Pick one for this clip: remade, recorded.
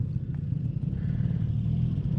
recorded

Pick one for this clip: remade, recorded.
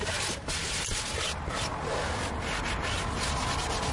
recorded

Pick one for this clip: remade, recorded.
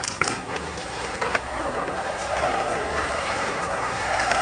remade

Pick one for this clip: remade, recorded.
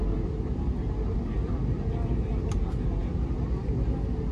recorded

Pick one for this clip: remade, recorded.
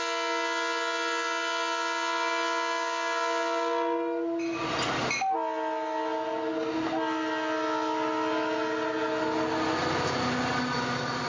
recorded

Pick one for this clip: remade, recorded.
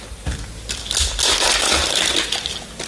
recorded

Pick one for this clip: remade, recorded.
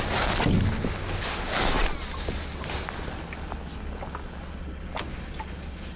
recorded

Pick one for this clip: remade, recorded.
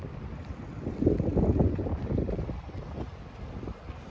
recorded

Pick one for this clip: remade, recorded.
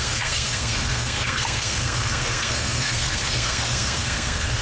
remade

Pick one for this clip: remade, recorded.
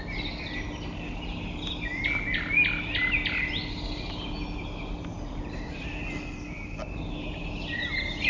recorded